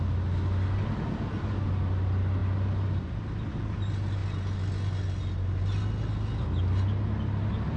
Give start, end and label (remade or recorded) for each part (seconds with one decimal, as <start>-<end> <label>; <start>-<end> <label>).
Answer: 0.0-7.8 recorded